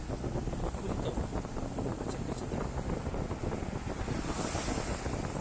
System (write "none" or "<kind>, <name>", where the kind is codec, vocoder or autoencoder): none